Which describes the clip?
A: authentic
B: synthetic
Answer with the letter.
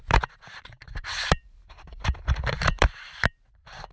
B